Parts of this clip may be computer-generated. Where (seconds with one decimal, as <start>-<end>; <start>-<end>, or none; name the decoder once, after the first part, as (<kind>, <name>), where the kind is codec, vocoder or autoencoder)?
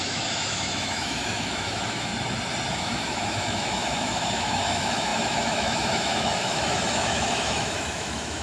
0.0-2.1 (autoencoder, DAC-VAE); 2.7-8.4